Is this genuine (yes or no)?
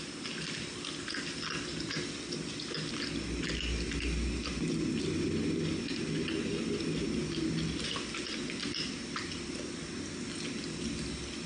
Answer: yes